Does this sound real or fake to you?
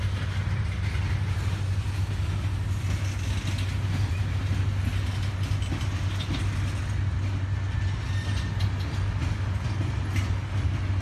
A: real